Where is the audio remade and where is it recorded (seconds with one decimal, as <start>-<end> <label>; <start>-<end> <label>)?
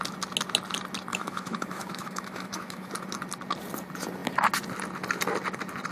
0.0-1.1 recorded; 1.1-2.9 remade; 2.9-5.9 recorded